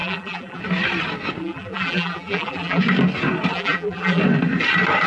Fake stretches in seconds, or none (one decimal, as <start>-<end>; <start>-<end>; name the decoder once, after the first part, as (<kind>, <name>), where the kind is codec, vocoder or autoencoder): 0.0-0.6 (vocoder, BigVGAN v2); 1.4-2.8; 3.5-4.2